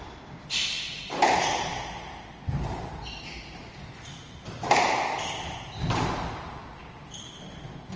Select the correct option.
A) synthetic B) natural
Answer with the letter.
B